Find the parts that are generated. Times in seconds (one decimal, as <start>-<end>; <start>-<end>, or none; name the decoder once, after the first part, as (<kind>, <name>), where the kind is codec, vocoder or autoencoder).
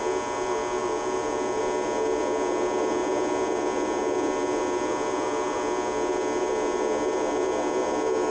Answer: 0.8-1.6 (vocoder, Vocos)